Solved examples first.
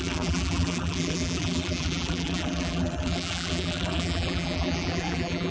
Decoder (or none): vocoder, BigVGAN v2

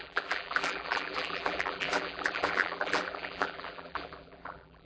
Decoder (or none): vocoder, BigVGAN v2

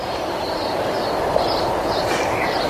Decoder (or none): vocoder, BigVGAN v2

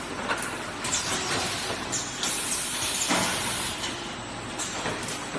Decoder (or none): none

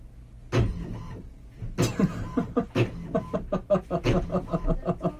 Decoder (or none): none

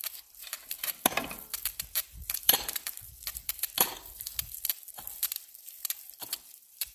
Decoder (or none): vocoder, BigVGAN v2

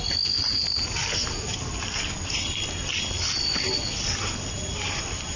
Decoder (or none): none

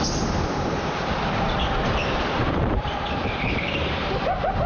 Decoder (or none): vocoder, BigVGAN v2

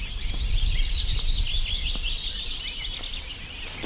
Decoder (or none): none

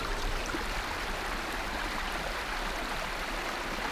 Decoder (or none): none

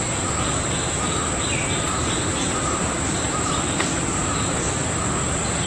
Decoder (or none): vocoder, BigVGAN v2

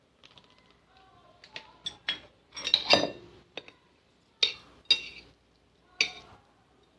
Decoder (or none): none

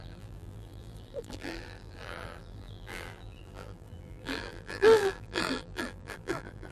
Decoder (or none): vocoder, BigVGAN v2